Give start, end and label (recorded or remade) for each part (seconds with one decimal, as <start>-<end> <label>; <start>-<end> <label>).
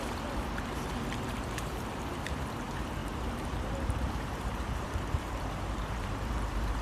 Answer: 0.0-6.8 remade